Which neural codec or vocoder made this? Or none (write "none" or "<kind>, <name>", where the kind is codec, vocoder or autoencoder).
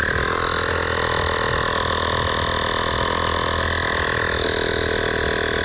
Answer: none